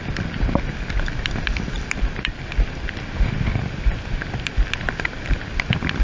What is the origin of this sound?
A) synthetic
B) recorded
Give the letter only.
B